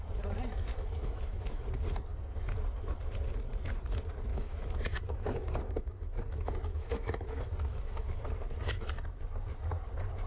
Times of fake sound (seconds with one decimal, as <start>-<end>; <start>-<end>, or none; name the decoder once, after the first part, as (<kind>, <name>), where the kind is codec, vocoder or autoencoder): 0.7-1.6 (autoencoder, DAC-VAE); 4.3-8.2